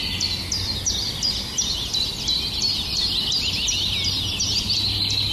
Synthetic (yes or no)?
no